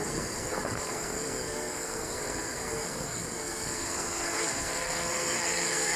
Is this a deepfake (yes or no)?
yes